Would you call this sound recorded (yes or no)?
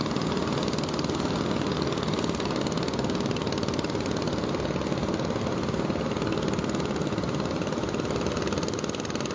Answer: yes